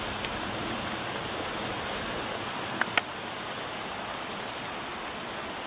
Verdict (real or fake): real